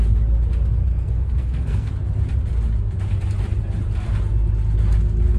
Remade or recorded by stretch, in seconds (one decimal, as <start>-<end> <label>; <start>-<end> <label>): 0.0-0.9 recorded; 0.9-1.9 remade; 1.9-5.4 recorded

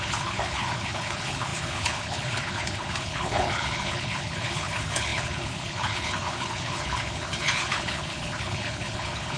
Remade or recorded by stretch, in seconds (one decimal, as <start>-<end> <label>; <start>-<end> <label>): 0.0-9.4 remade